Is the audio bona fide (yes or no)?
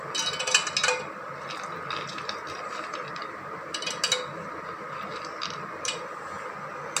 yes